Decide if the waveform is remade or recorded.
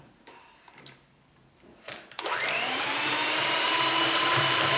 remade